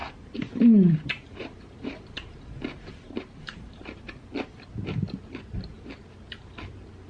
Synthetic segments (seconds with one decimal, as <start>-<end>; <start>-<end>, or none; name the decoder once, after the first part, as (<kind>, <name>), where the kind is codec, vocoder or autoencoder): 0.0-4.3 (vocoder, BigVGAN v2)